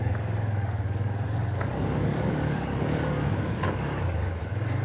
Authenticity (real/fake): fake